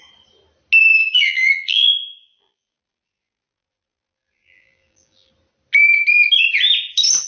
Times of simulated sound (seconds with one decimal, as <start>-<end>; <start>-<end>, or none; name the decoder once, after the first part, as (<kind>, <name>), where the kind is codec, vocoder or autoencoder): 0.9-5.3 (vocoder, BigVGAN v2)